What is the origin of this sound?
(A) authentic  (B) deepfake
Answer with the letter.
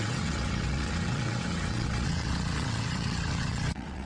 B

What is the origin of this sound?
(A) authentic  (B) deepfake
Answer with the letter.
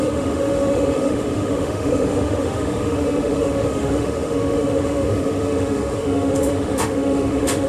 B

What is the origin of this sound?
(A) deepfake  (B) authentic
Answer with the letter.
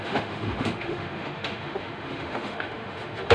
A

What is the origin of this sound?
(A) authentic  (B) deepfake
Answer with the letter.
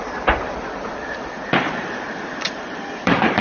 B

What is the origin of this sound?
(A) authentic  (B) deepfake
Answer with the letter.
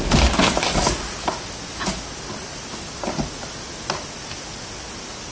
A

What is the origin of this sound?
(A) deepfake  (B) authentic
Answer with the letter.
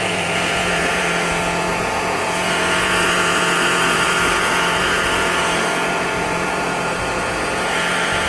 A